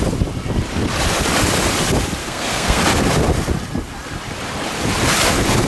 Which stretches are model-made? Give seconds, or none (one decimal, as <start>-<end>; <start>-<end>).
2.2-2.8